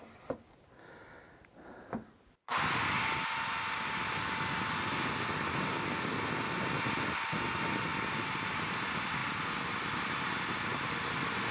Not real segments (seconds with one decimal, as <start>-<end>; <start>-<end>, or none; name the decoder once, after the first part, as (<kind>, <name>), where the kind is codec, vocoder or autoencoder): none